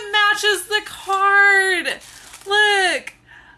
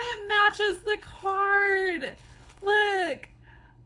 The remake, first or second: second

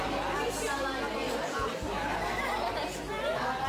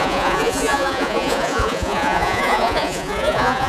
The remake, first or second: second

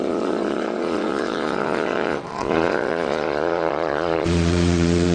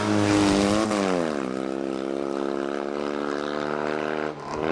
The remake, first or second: first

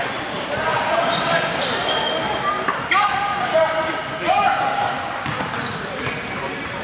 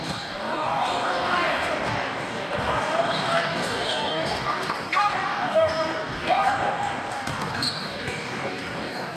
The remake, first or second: second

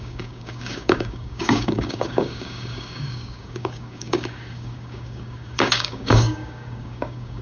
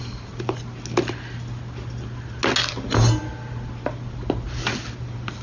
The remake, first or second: first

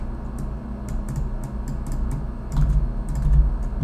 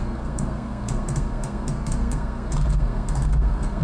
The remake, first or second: second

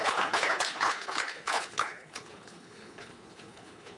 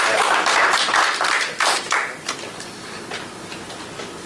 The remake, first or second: first